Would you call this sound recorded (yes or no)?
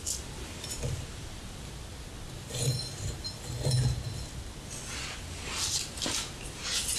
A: yes